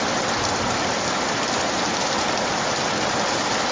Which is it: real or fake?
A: real